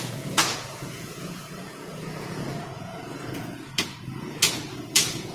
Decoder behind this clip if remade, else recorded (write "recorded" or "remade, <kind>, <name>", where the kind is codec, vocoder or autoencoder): remade, vocoder, Vocos